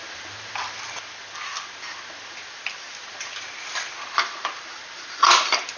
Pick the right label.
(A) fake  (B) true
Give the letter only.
B